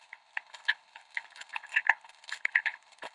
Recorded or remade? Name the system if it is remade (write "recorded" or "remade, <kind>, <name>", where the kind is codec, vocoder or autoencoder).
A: remade, codec, HILCodec